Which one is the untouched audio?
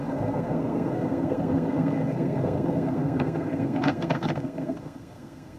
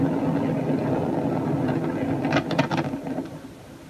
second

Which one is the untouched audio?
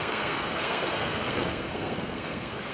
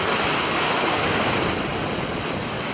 second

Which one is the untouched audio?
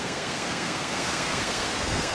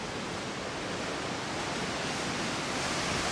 second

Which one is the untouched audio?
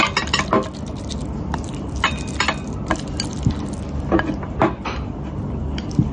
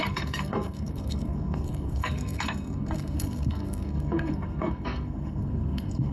first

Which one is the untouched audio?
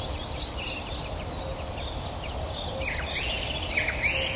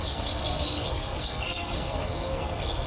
first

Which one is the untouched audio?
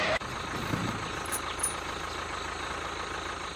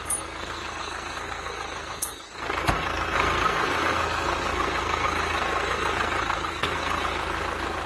first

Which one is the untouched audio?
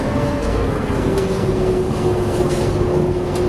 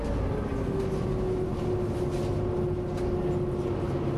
second